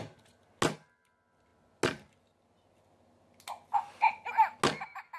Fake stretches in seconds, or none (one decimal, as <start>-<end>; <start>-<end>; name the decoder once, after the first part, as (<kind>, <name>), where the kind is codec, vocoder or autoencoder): none